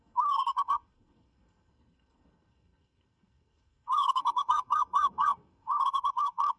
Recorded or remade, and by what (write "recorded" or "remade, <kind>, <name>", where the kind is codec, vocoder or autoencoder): remade, codec, SNAC